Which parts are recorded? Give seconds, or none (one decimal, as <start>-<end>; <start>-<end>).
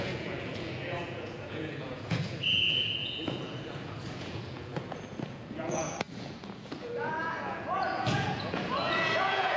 none